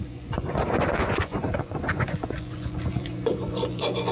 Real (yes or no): no